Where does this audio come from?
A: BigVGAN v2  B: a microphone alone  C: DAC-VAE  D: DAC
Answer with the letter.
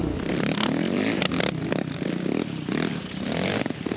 B